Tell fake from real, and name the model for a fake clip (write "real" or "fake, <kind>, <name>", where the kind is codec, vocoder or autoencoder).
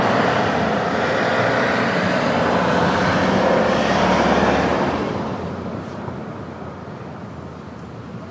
real